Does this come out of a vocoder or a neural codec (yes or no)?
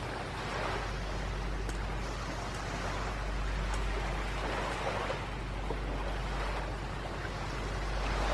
no